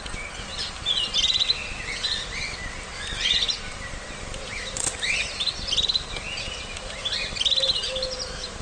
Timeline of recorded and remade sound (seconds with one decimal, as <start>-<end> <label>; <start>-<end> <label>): 0.0-8.6 recorded